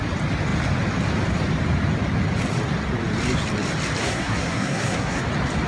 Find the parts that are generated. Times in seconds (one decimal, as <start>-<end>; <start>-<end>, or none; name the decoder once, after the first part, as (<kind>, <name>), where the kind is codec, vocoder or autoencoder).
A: 4.0-5.2 (codec, SNAC)